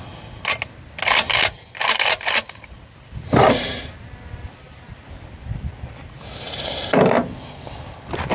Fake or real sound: real